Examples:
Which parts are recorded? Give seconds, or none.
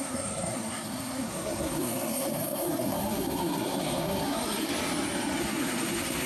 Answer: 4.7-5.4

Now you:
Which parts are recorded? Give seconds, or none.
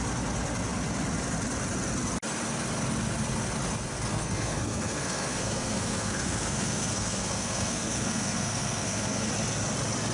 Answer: 0.0-4.1; 9.3-10.1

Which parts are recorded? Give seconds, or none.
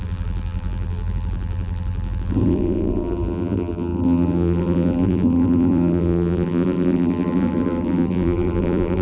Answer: none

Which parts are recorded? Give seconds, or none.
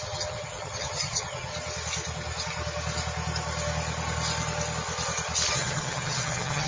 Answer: 1.5-5.5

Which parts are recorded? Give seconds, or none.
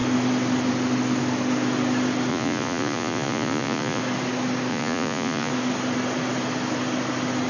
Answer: 0.0-2.3; 4.0-4.7; 5.5-7.5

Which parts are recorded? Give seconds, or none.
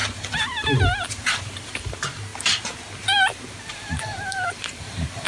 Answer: 0.0-1.1; 2.3-4.0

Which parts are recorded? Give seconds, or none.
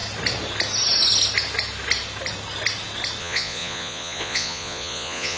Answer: 0.0-3.2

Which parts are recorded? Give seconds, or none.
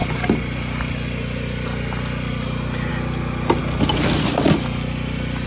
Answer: 0.0-5.5